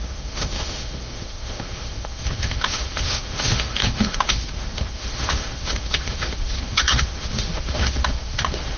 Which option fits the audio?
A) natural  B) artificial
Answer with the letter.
B